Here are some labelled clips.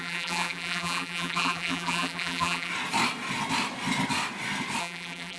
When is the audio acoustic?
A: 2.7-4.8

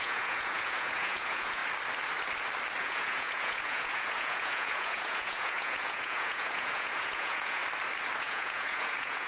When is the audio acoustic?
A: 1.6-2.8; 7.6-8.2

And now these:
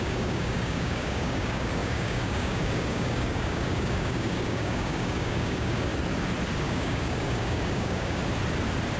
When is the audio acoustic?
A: 5.9-6.6; 8.2-9.0

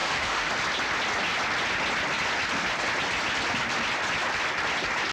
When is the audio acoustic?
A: 0.5-5.1

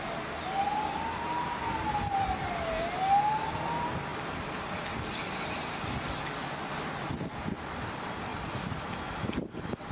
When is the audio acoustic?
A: 0.0-9.9

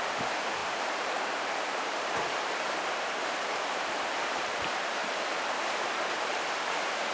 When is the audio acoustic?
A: 5.0-6.5